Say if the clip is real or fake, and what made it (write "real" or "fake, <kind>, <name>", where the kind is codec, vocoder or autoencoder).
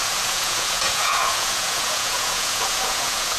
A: fake, vocoder, Vocos